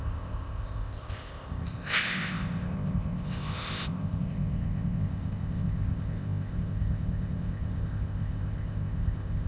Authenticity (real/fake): fake